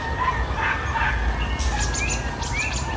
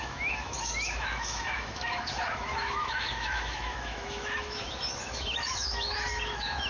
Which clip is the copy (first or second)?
second